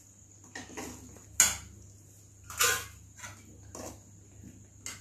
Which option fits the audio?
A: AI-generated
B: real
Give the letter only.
B